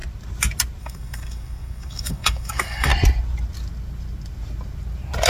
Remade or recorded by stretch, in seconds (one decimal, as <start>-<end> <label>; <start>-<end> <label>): 0.0-0.8 recorded; 0.8-2.9 remade; 2.9-5.3 recorded